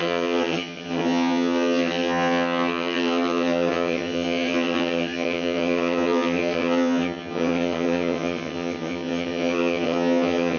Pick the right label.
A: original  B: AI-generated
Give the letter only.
B